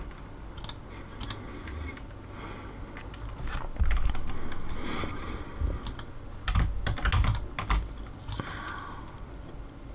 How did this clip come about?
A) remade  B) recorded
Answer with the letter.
B